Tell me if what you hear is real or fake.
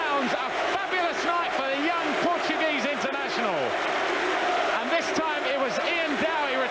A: real